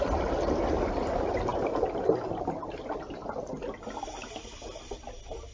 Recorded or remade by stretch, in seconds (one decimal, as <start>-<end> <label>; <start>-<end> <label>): 0.0-5.5 recorded